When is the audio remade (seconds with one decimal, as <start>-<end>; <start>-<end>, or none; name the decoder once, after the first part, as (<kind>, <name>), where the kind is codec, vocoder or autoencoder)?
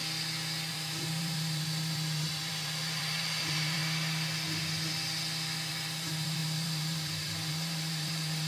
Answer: 0.7-3.8 (vocoder, BigVGAN v2); 5.7-8.5